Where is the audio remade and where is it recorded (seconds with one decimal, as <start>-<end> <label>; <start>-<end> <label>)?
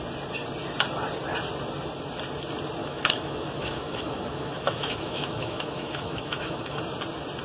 0.0-2.8 recorded; 2.8-6.8 remade; 6.8-7.4 recorded